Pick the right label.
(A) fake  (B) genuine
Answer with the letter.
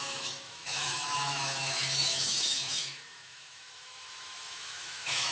A